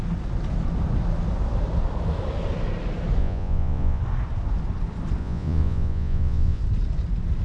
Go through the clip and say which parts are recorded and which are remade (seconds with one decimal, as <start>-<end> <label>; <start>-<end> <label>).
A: 0.0-3.2 recorded; 3.2-4.0 remade; 4.0-5.2 recorded; 5.2-6.6 remade; 6.6-7.4 recorded